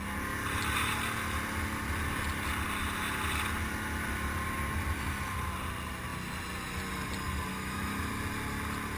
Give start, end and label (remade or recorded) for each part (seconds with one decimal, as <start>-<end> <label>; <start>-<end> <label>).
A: 0.0-7.5 recorded; 7.5-8.1 remade; 8.1-9.0 recorded